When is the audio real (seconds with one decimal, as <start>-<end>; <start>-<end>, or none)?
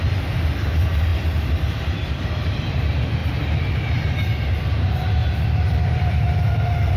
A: 1.1-2.1; 3.2-3.9; 5.2-5.8